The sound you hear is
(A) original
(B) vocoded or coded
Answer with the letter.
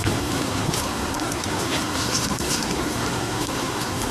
B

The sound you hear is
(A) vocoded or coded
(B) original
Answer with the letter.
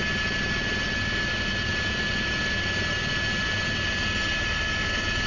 B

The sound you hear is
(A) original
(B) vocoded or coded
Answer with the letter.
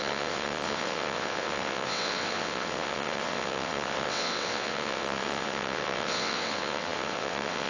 B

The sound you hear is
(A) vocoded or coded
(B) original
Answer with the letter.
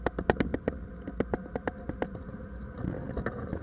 B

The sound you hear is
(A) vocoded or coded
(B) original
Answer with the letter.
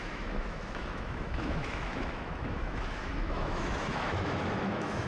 A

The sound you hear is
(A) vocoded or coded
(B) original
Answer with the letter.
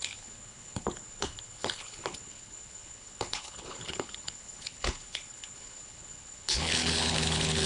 A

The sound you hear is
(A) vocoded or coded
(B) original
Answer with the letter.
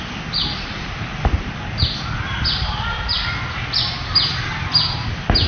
B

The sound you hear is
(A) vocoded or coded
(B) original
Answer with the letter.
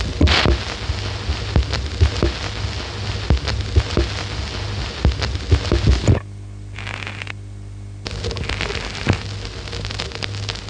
B